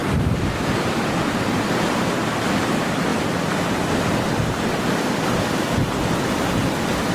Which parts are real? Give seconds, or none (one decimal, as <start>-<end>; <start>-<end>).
0.0-7.1